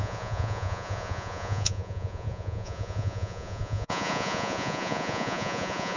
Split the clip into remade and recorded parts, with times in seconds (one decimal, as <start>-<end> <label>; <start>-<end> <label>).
0.0-6.0 remade